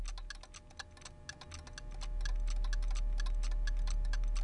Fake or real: real